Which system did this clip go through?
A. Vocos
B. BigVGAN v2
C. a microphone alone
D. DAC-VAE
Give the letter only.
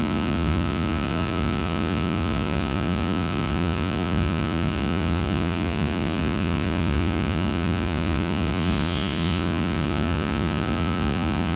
A